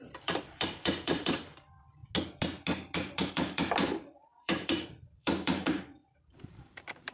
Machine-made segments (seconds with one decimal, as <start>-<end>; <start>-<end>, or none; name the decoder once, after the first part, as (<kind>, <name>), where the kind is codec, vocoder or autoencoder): 0.0-2.0 (vocoder, BigVGAN v2); 3.3-7.1